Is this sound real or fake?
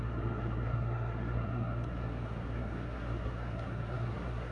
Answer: fake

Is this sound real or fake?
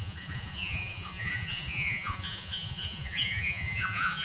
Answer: fake